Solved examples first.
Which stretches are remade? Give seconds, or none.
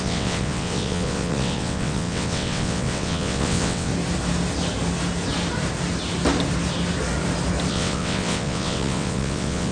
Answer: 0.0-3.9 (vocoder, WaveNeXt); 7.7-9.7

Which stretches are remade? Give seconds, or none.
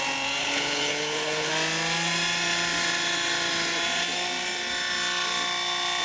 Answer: 0.4-1.5 (codec, HILCodec)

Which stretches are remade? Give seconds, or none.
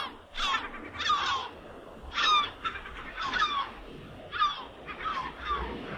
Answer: 1.4-4.2 (codec, DAC); 5.1-6.0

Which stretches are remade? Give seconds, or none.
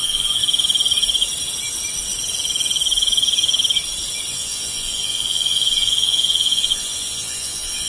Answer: 0.0-0.4 (vocoder, Vocos); 4.3-7.9